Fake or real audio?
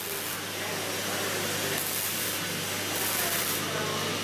real